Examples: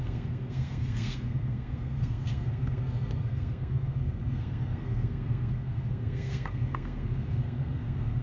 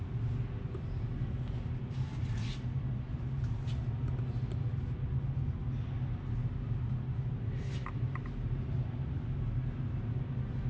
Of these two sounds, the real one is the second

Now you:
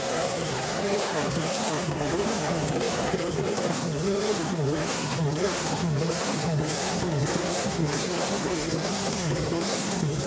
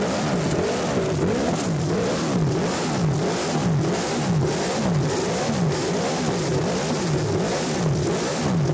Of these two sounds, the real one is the second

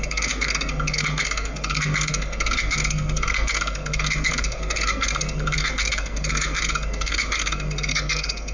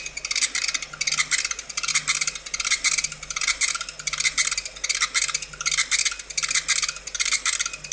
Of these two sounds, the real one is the second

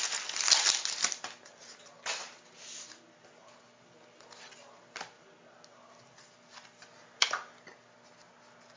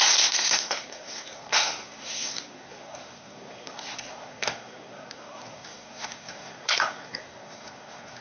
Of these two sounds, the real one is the first